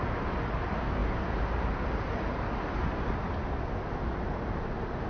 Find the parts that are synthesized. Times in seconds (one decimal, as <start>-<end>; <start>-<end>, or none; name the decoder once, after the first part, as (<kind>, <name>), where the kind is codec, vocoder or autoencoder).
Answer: none